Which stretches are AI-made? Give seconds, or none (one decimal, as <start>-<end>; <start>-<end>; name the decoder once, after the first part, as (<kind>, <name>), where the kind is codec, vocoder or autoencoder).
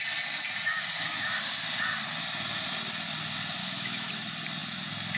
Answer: 3.6-4.1 (autoencoder, DAC-VAE)